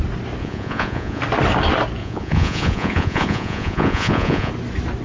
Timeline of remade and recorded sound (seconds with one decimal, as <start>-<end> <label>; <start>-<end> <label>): 0.0-0.4 recorded; 0.4-1.2 remade; 1.2-2.0 recorded; 2.0-4.5 remade; 4.5-5.0 recorded